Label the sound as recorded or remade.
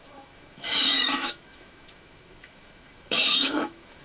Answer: remade